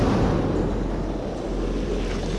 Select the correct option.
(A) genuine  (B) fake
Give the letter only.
A